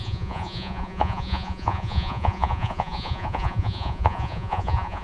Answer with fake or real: fake